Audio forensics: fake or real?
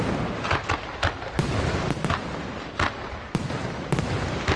real